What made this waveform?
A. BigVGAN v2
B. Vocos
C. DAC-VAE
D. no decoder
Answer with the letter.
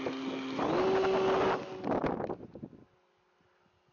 D